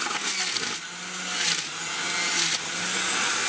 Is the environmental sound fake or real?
real